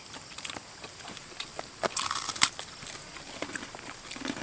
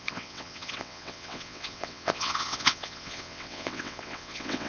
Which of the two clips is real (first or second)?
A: first